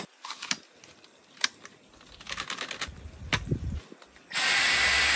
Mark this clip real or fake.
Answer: real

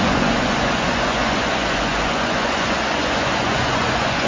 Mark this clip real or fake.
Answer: fake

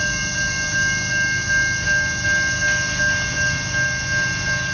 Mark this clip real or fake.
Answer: real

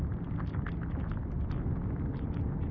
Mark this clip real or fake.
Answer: real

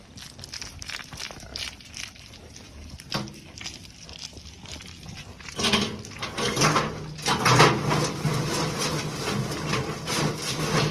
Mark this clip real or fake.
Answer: real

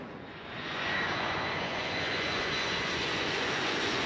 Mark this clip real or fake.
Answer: fake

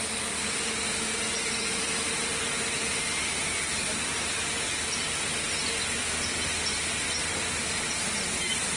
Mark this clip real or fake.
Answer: real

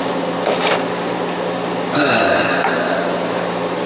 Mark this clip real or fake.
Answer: real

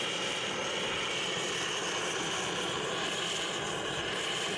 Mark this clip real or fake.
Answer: real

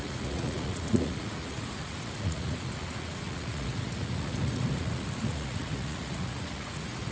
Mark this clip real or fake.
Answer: fake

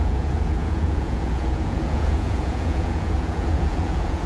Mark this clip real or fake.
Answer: fake